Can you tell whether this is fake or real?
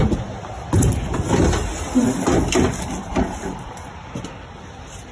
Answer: real